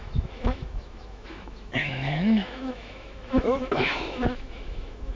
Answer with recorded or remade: remade